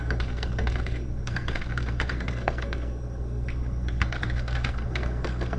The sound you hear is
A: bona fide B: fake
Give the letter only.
B